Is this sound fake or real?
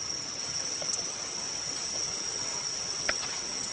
fake